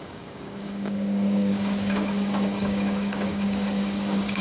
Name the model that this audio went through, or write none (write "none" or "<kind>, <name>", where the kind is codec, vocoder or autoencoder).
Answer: codec, DAC